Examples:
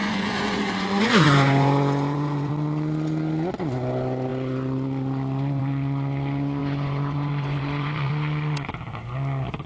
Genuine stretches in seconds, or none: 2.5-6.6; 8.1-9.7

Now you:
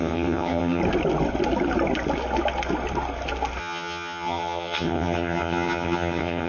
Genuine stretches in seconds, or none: 0.8-3.6